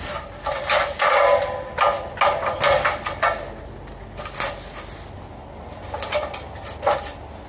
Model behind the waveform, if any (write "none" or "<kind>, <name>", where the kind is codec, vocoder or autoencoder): none